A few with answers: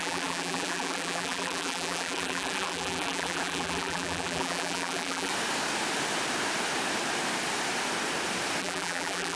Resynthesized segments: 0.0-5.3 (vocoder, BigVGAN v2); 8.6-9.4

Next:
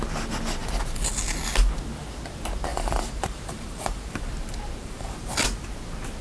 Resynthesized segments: 2.7-4.3 (vocoder, BigVGAN v2); 4.8-5.3

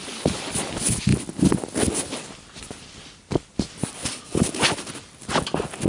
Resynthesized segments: 0.0-1.1 (vocoder, BigVGAN v2); 4.6-5.9

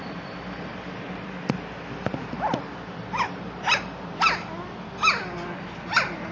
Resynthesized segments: 0.0-1.1 (vocoder, BigVGAN v2); 2.5-3.1

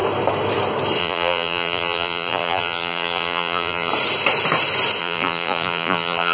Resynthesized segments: 1.0-3.9 (vocoder, BigVGAN v2); 5.0-6.3

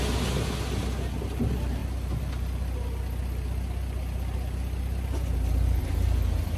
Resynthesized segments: none